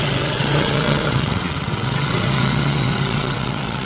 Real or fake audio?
fake